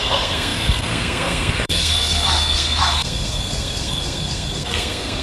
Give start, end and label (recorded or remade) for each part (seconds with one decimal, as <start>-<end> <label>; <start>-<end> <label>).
0.0-5.2 remade